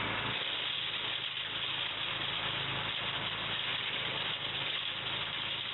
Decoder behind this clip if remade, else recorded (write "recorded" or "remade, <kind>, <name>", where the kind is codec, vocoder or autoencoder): recorded